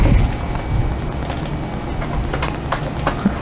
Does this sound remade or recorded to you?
recorded